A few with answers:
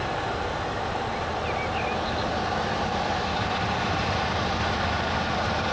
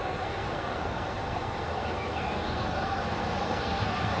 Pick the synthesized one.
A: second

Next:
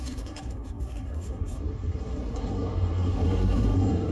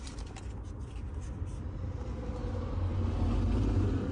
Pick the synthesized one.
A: first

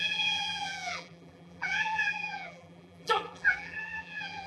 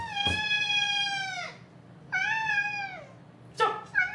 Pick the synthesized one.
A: first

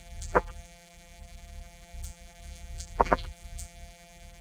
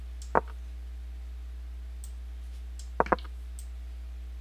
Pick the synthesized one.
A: first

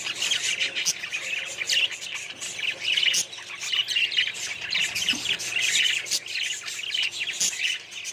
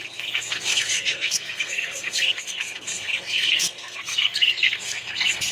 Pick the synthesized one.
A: second